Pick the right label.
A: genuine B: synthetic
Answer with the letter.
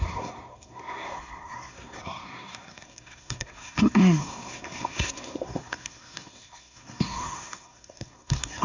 B